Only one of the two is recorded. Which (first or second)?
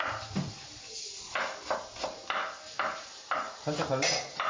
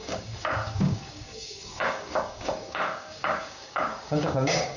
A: first